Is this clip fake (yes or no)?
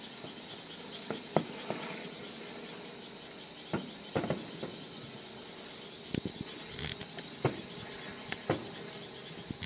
no